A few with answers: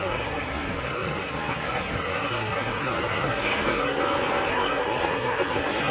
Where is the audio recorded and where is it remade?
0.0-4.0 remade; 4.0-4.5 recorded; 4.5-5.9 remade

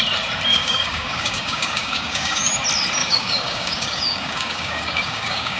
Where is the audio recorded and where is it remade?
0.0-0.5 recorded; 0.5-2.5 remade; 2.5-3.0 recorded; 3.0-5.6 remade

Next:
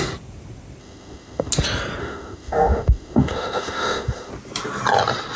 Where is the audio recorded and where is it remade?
0.0-0.8 recorded; 0.8-1.5 remade; 1.5-2.0 recorded; 2.0-4.3 remade; 4.3-5.4 recorded

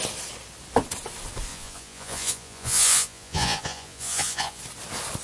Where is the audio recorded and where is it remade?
0.0-1.5 recorded; 1.5-4.6 remade; 4.6-5.2 recorded

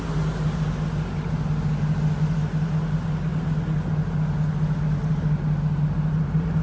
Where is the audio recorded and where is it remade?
0.0-6.6 recorded

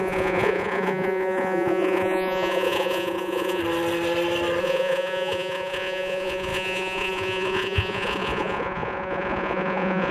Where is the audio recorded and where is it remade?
0.0-3.6 remade; 3.6-4.6 recorded; 4.6-10.1 remade

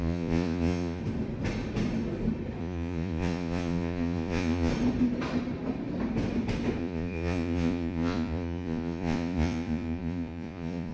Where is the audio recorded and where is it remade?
0.0-1.0 remade; 1.0-2.6 recorded; 2.6-4.7 remade; 4.7-6.8 recorded; 6.8-10.9 remade